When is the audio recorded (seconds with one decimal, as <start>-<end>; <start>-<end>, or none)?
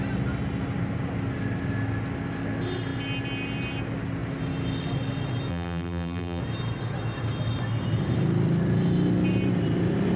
0.0-5.5; 6.4-10.2